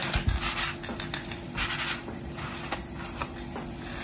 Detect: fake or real real